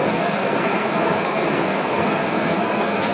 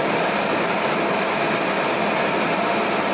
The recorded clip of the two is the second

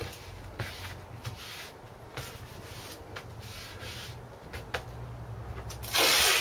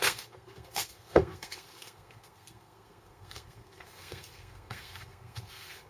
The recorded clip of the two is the first